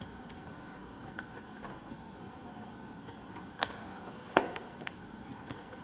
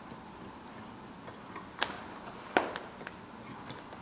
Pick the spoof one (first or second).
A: first